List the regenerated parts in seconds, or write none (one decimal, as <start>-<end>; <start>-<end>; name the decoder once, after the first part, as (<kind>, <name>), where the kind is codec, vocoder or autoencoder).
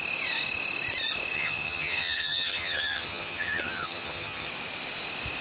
1.3-4.5 (vocoder, HiFi-GAN)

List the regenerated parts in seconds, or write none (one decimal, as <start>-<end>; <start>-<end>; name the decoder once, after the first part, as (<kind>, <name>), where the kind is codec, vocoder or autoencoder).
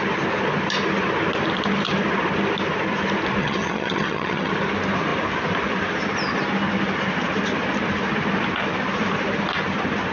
3.4-4.5 (vocoder, HiFi-GAN)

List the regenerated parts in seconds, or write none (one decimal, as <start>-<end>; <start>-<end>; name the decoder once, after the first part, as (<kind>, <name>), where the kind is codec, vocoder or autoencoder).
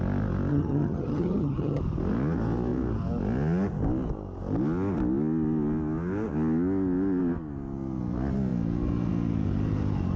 0.5-1.8 (vocoder, HiFi-GAN)